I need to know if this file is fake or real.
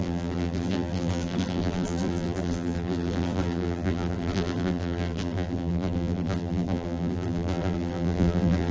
fake